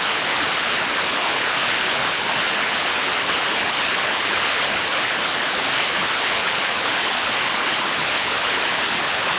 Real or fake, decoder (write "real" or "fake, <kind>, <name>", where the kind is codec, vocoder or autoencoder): fake, codec, HILCodec